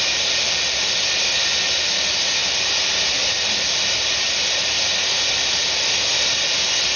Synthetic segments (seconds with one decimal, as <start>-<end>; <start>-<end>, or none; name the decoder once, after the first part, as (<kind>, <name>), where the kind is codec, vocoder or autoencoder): none